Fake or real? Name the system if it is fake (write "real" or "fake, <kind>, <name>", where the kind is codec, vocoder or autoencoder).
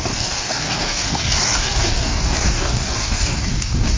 fake, codec, DAC